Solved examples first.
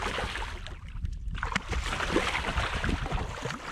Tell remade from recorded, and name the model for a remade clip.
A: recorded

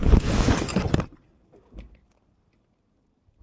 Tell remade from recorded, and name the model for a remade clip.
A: recorded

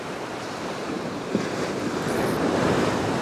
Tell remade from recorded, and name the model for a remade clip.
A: remade, vocoder, BigVGAN v2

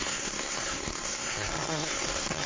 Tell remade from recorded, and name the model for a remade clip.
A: remade, codec, SNAC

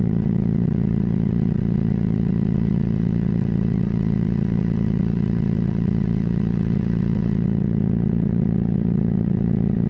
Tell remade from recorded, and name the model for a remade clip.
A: remade, vocoder, WaveNeXt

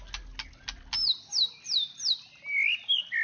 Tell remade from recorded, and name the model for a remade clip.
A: recorded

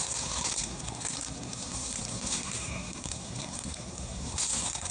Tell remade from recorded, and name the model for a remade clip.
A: remade, codec, SNAC